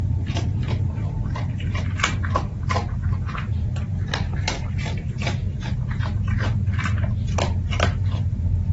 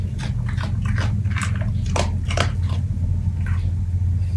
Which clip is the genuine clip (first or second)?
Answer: second